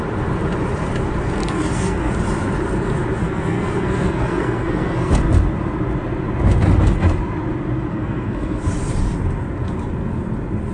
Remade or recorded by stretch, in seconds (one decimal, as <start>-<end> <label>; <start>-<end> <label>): 0.0-1.4 recorded; 1.4-2.1 remade; 2.1-3.2 recorded; 3.2-5.1 remade; 5.1-7.9 recorded; 7.9-8.7 remade; 8.7-10.7 recorded